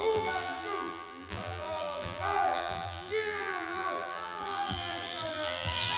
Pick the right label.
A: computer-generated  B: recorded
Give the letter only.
A